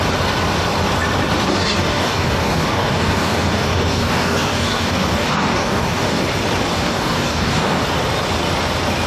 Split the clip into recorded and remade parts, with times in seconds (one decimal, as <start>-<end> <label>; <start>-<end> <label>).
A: 0.0-1.5 recorded; 1.5-6.2 remade; 6.2-6.7 recorded; 6.7-7.8 remade; 7.8-9.1 recorded